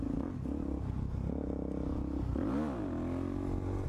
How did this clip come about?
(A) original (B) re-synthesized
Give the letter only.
A